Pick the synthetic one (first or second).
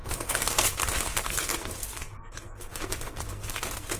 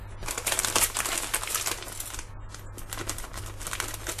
first